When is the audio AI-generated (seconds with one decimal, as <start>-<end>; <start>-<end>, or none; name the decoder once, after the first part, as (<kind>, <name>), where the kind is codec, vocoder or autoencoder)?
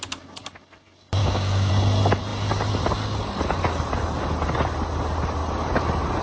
1.2-1.7 (codec, DAC)